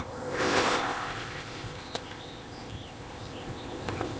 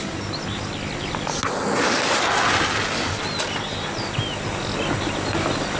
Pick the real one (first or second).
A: second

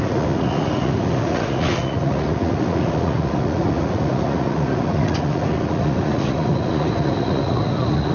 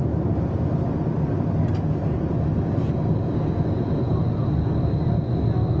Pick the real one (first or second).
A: second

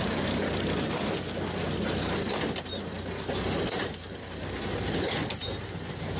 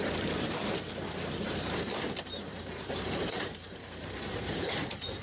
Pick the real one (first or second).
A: first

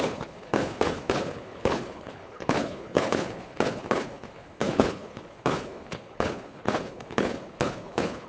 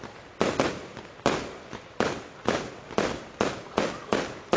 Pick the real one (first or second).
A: second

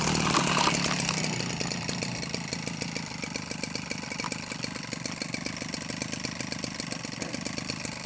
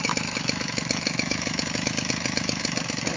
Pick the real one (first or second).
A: first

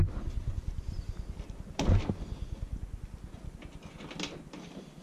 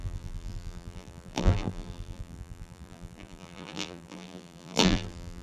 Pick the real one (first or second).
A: first